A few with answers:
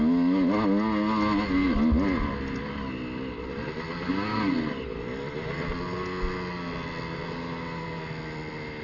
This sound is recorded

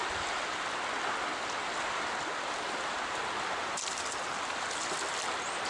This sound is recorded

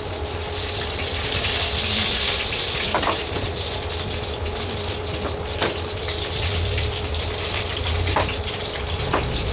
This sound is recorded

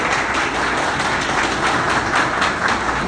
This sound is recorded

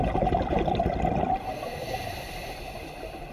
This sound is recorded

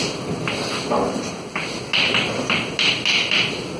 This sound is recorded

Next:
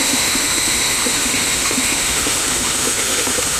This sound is remade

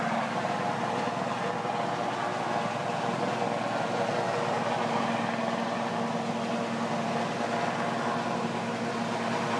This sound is recorded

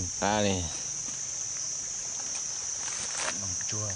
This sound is recorded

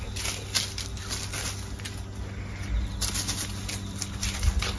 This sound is recorded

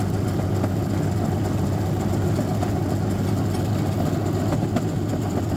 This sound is recorded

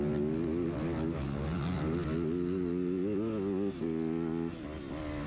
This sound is recorded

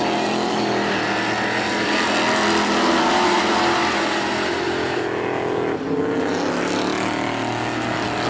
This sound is recorded